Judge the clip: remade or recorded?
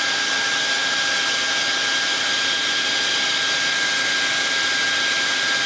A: recorded